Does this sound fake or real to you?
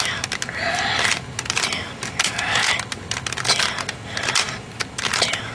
real